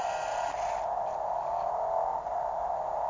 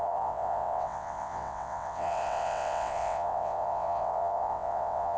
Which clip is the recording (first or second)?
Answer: first